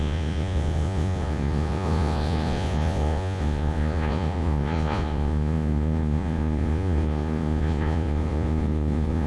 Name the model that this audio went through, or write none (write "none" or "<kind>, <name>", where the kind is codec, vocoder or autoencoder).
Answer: vocoder, Vocos